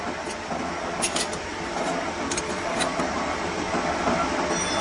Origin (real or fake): real